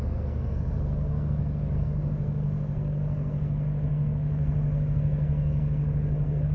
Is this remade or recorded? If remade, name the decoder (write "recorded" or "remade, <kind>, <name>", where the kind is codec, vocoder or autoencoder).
remade, codec, SNAC